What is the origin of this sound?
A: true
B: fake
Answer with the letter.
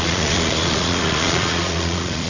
B